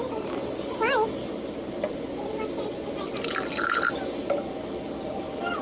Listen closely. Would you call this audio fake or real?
real